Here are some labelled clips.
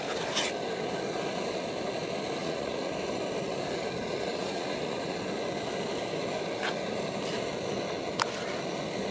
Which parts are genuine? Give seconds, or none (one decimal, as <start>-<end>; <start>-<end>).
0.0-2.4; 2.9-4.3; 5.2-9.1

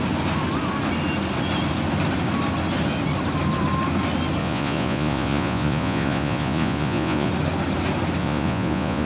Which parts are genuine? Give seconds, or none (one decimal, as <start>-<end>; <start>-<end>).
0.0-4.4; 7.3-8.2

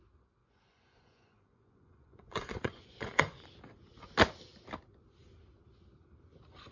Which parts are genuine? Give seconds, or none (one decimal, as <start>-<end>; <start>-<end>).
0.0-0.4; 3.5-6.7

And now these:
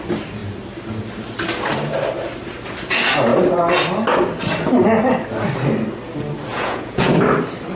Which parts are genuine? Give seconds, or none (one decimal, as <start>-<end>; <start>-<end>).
0.0-6.5; 7.1-7.8

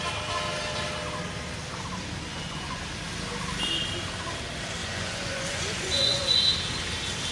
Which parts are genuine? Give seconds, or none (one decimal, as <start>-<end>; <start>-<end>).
0.0-2.3; 2.8-4.8; 6.5-7.3

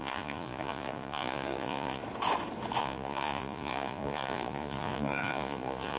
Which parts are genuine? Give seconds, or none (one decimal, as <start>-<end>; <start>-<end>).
2.0-2.8

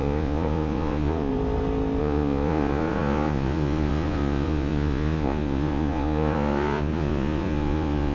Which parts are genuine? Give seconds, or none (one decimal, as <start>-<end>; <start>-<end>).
1.3-2.0